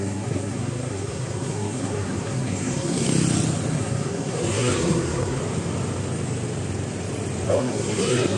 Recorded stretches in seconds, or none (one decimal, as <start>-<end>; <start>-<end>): 3.1-3.7; 5.4-7.5